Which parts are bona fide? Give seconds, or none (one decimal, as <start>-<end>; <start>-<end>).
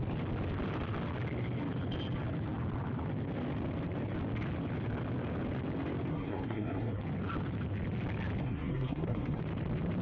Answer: 0.0-6.1; 7.0-8.4; 9.4-10.0